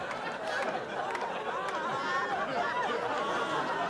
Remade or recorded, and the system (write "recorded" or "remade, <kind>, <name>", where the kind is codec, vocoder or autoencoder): recorded